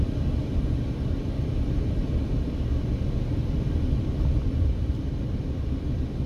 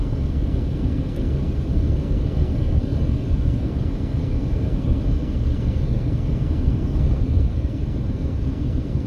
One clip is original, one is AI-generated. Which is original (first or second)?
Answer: first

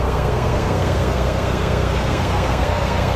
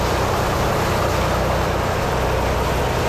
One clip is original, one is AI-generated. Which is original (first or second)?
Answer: second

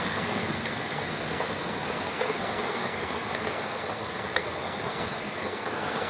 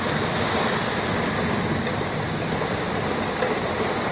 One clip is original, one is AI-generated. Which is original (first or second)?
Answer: second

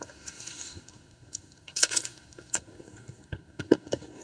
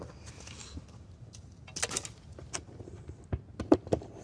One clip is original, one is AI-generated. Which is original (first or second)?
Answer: second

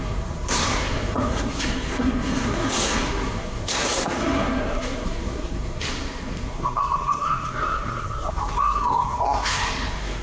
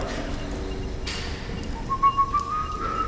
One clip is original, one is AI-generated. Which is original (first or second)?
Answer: second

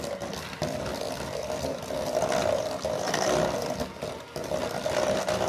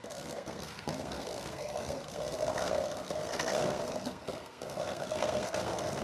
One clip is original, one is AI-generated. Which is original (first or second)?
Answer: first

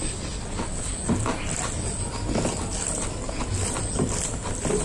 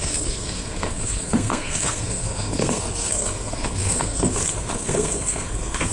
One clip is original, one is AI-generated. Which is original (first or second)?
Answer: first